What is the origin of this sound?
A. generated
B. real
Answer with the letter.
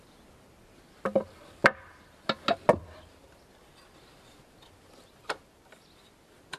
B